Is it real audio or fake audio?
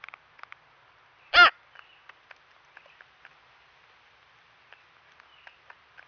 real